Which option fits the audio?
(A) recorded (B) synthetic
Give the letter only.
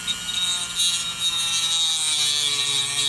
A